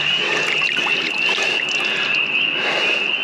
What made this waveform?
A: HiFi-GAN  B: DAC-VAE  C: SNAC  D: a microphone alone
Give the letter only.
D